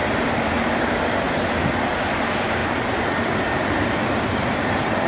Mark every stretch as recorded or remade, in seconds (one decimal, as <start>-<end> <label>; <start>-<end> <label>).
0.0-1.5 remade; 1.5-5.1 recorded